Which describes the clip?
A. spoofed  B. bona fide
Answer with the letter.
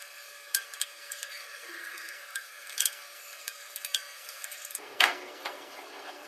A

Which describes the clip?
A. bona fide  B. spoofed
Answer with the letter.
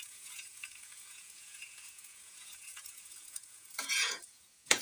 B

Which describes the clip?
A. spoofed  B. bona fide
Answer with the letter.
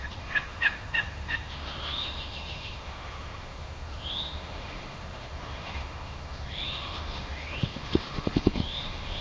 A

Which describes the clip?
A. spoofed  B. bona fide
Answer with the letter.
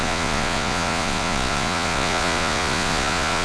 A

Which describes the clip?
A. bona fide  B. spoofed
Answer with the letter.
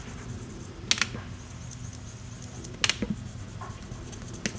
A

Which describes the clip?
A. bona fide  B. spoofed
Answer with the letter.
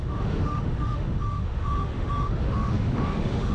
B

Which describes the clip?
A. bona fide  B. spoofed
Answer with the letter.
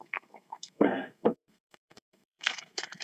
B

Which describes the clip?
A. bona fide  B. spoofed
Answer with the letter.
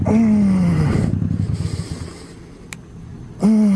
A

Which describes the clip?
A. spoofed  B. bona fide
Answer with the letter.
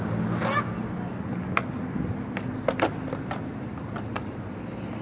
B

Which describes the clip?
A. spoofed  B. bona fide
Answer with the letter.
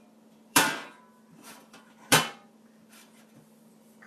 A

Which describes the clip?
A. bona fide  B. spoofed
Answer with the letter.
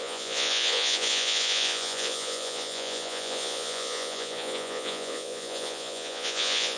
B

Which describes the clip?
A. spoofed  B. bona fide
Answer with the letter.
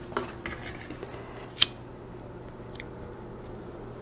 B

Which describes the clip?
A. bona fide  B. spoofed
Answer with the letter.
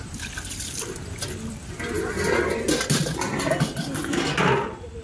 A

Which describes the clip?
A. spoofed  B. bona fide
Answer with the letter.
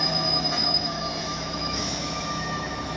A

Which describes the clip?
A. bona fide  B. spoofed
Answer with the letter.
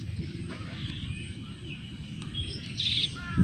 B